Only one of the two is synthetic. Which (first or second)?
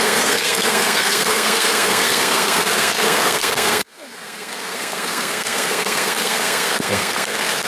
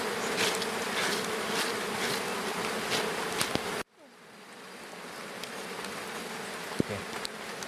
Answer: first